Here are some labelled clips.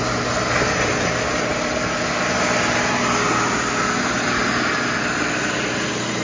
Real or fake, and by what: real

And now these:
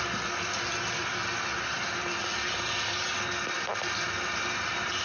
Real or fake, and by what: real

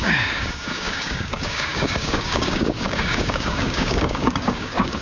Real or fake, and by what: fake, codec, DAC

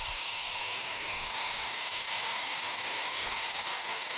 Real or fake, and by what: fake, codec, DAC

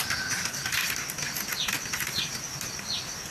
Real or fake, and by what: real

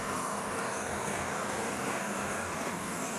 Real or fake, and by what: fake, codec, DAC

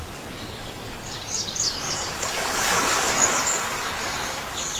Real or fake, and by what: fake, codec, DAC